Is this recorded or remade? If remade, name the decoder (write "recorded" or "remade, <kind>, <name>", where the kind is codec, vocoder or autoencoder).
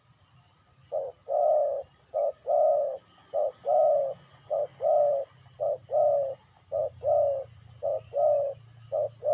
recorded